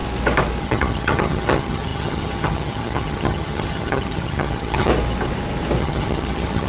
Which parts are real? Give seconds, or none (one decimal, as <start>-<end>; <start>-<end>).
0.0-0.6; 4.9-5.8